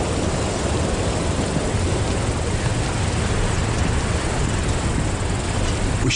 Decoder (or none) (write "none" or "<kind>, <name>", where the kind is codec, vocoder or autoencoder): none